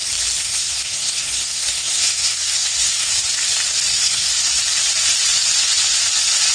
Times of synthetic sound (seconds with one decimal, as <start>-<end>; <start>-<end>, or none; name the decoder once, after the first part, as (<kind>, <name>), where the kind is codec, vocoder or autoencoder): 0.4-3.1 (codec, SNAC); 3.9-4.6

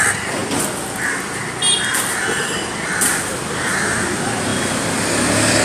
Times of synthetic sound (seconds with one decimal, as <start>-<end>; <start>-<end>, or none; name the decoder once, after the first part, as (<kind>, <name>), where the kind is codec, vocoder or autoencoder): none

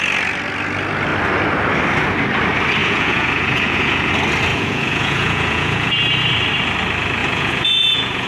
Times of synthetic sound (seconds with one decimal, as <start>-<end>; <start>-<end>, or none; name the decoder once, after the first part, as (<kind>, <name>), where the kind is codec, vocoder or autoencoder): 2.8-4.1 (vocoder, Vocos); 4.5-5.9; 7.2-8.3

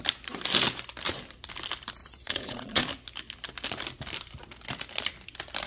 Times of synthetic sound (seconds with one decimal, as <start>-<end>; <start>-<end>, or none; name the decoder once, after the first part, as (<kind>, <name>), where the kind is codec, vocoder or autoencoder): 2.0-2.8 (vocoder, Vocos)